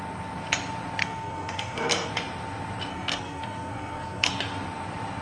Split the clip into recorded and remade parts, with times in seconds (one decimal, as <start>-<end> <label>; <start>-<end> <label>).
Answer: 0.0-1.0 recorded; 1.0-2.1 remade; 2.1-2.9 recorded; 2.9-4.3 remade; 4.3-5.2 recorded